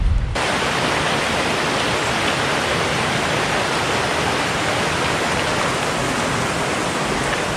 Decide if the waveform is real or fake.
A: real